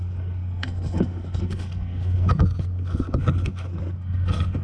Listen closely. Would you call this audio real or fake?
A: fake